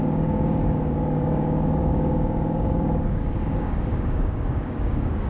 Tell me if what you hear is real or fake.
fake